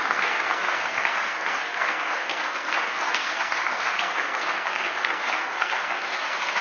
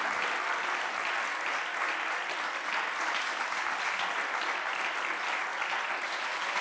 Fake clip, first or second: first